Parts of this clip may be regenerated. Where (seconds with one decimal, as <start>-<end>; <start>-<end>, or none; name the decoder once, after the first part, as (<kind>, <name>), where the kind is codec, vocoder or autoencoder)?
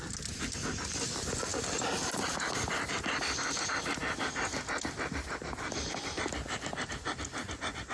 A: none